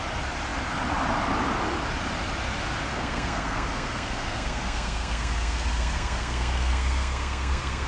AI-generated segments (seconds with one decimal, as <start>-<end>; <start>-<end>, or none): 2.9-7.9